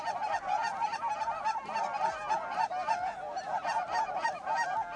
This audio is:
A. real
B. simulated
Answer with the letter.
A